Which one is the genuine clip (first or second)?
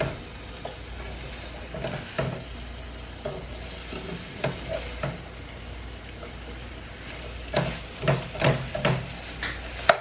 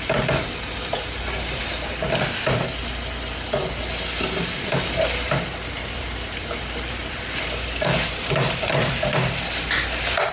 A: first